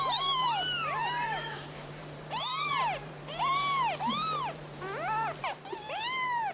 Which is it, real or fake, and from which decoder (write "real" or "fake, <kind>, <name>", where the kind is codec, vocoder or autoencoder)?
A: fake, vocoder, BigVGAN v2